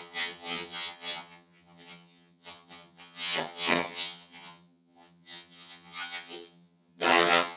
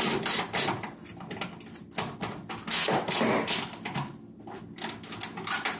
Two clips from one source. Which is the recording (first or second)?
second